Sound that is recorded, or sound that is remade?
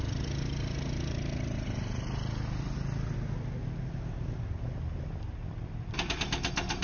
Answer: recorded